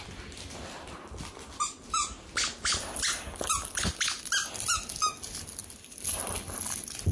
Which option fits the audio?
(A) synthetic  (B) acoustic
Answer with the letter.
B